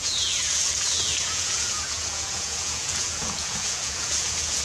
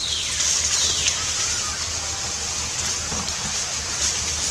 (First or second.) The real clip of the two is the second